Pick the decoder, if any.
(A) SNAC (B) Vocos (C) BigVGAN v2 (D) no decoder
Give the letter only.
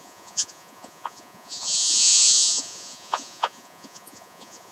B